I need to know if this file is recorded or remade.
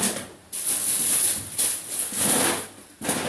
recorded